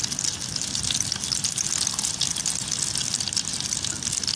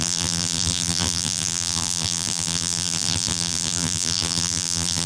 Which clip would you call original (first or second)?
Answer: first